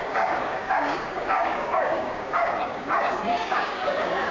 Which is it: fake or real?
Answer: fake